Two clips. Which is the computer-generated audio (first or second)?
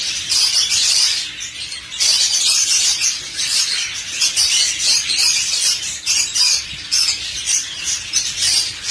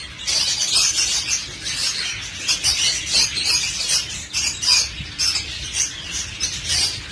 first